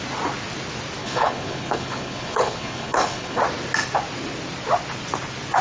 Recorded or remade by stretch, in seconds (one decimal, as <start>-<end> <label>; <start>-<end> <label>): 0.0-1.0 recorded; 1.0-3.4 remade; 3.4-5.6 recorded